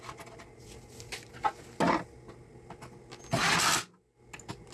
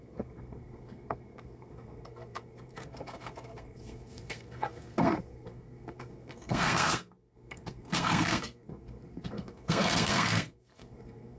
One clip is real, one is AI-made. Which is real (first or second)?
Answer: first